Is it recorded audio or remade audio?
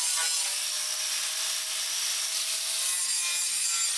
recorded